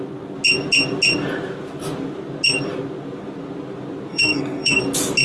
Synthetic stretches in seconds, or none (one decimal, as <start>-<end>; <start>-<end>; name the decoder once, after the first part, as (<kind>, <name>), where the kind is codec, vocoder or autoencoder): 4.1-4.8 (codec, SNAC)